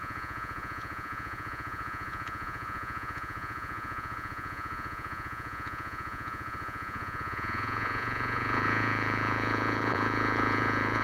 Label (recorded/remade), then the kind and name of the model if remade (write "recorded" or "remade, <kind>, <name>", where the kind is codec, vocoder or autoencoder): remade, vocoder, Vocos